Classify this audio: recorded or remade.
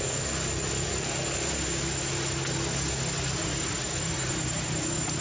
recorded